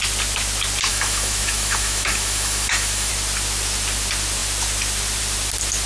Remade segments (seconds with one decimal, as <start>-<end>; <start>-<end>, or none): 0.9-3.1